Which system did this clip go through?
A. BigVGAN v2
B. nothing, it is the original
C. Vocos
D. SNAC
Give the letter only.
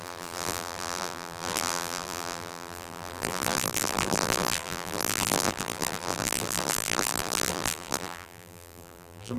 A